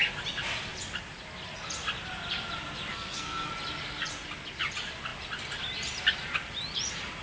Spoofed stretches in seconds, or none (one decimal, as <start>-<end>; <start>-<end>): 2.9-3.5